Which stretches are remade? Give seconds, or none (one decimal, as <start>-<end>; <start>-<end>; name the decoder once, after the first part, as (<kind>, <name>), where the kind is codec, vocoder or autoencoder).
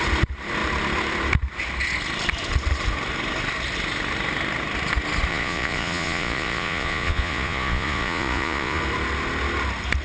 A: 5.3-8.8 (vocoder, Vocos)